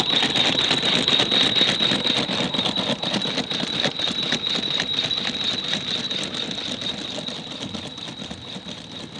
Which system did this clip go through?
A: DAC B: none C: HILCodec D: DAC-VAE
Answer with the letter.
B